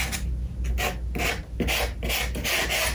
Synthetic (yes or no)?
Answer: no